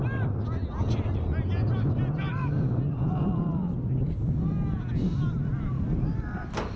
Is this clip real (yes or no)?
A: yes